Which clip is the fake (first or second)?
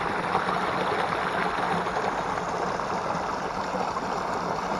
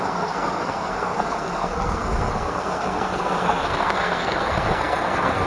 second